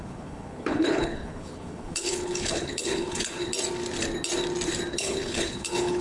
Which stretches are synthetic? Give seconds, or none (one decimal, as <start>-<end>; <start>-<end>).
0.0-3.5; 4.9-6.0